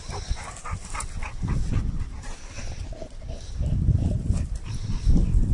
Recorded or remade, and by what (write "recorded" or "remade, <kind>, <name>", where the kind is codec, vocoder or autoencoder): recorded